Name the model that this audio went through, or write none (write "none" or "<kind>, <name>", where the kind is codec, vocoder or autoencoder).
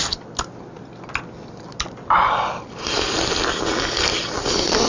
none